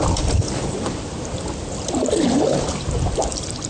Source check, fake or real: real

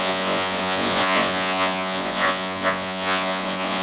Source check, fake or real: fake